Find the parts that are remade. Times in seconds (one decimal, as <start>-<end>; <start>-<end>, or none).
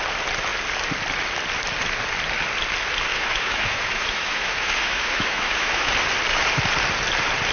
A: 3.1-5.9